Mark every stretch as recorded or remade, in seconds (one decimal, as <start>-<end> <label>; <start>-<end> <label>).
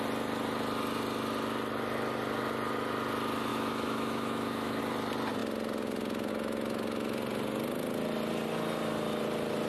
0.0-3.5 recorded; 3.5-4.8 remade; 4.8-9.7 recorded